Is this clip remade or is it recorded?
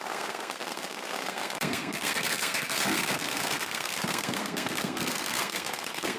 remade